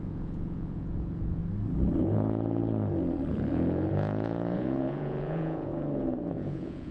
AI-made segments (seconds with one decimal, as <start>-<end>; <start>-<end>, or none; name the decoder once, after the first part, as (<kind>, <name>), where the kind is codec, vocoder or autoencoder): 0.0-1.4 (vocoder, Vocos); 2.0-2.6; 3.3-5.7; 6.3-6.9